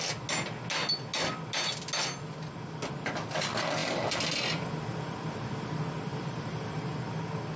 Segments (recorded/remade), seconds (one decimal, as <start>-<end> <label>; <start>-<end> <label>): 0.0-3.8 recorded; 3.8-4.7 remade; 4.7-6.1 recorded; 6.1-7.1 remade; 7.1-7.6 recorded